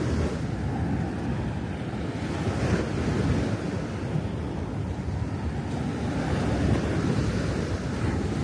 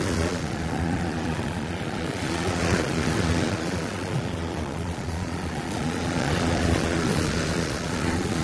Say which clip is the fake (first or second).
second